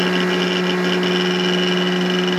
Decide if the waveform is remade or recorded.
recorded